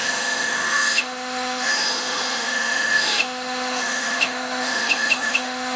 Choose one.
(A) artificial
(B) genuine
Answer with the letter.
A